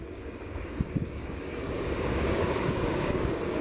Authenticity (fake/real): fake